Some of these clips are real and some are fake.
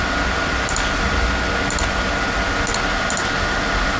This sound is real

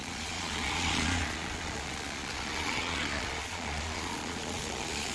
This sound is fake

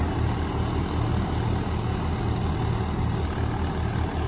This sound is real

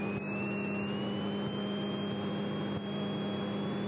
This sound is real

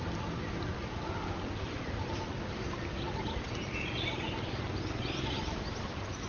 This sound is real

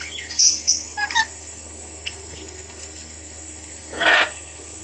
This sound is fake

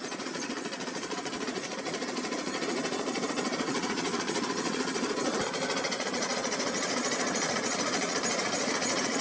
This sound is fake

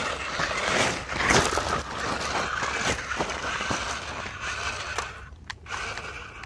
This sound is real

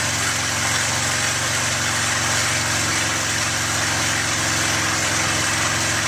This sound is real